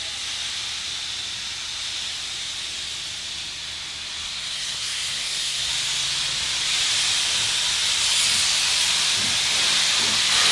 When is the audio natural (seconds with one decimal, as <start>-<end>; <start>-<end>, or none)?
0.0-4.3; 5.7-10.5